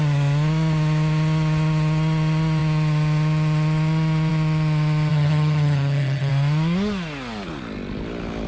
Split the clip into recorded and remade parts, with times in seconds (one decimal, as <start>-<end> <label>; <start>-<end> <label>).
0.0-5.1 recorded; 5.1-6.3 remade; 6.3-8.5 recorded